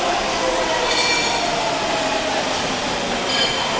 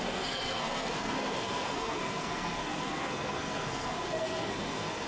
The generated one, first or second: second